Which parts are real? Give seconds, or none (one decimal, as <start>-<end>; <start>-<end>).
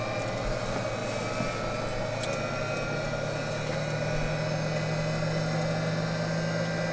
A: 0.0-6.9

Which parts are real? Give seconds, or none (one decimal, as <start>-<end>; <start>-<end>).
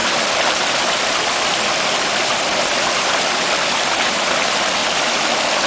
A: 0.0-0.7; 4.8-5.3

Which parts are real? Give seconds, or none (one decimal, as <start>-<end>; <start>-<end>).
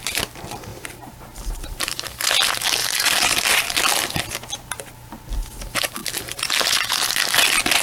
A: 0.0-0.7; 2.1-2.8; 3.6-7.8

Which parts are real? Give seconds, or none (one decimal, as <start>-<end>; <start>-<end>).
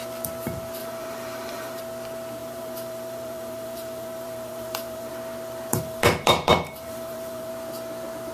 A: 0.0-0.8; 1.8-2.4; 5.1-5.7; 7.5-8.3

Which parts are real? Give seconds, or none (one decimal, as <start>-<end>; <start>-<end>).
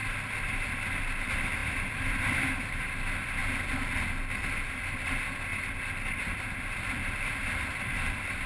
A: 1.0-1.6; 2.8-5.5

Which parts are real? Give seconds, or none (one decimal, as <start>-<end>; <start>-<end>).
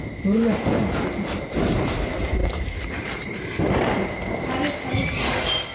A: 0.0-5.7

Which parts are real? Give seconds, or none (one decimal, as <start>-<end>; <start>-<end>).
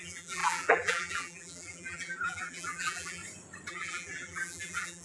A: 3.2-3.7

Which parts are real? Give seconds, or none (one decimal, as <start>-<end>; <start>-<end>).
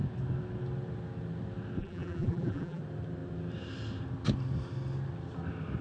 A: 0.0-1.8; 2.8-5.8